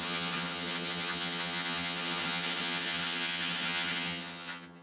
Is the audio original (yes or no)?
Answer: no